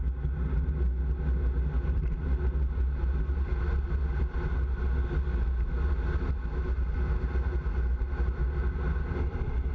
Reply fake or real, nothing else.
real